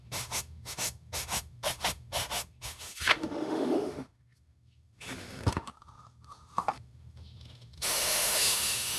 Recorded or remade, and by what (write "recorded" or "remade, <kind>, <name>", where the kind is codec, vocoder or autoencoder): remade, autoencoder, DAC-VAE